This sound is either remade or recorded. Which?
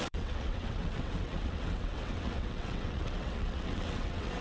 remade